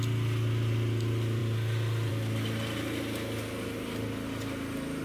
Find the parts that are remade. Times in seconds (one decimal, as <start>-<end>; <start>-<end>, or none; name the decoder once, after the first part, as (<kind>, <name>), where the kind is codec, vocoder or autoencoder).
none